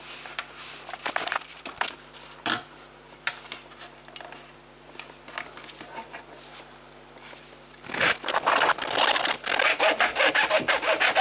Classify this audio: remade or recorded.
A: recorded